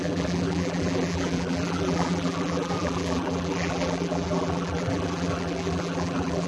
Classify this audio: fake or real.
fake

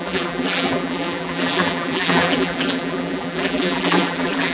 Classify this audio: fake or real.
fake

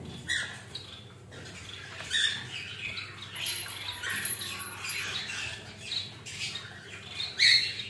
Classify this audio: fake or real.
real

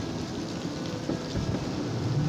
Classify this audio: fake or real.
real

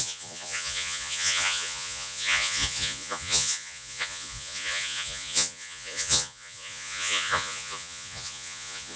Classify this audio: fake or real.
fake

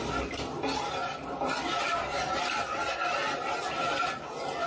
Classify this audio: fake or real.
real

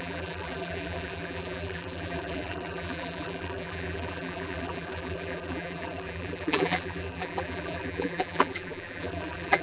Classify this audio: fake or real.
fake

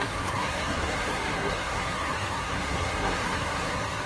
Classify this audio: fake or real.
fake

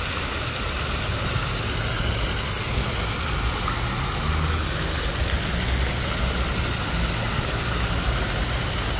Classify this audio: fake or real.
real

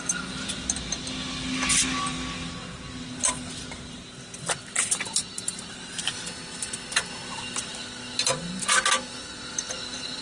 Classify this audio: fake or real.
real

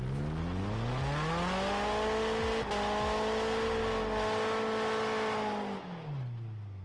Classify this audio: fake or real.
real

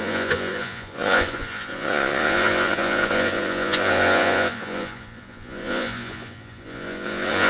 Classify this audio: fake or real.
fake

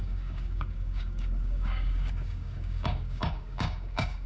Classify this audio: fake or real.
fake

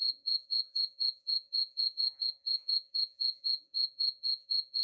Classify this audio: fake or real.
fake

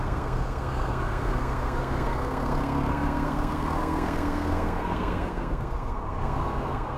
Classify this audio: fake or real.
fake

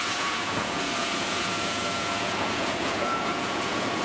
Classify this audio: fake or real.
fake